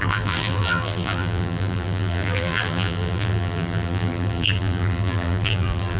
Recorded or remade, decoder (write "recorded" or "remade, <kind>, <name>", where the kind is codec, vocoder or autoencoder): remade, vocoder, BigVGAN v2